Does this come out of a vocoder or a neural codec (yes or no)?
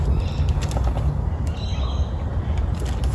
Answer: no